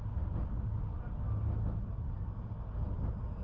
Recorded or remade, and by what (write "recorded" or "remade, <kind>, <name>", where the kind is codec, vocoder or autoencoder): recorded